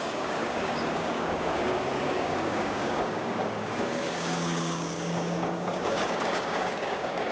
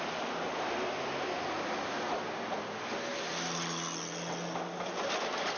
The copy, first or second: first